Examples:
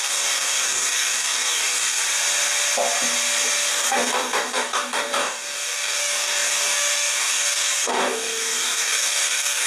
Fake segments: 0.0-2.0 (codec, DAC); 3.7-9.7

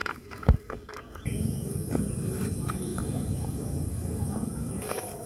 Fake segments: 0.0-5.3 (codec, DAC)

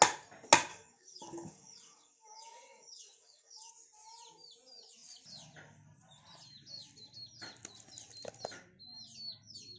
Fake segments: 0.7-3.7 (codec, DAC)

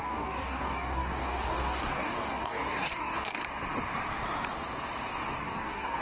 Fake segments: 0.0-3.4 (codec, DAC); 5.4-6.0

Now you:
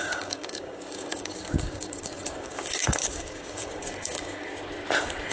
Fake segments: 0.0-4.5 (codec, DAC)

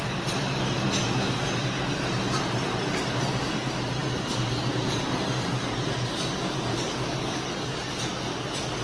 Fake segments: 6.7-7.5 (codec, DAC)